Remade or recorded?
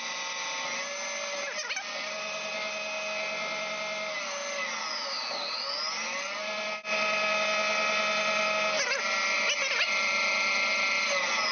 recorded